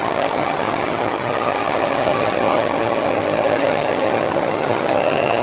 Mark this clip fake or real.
fake